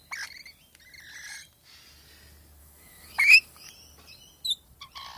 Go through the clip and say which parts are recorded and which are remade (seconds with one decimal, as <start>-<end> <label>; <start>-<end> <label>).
0.0-2.6 recorded; 2.6-3.7 remade; 3.7-5.2 recorded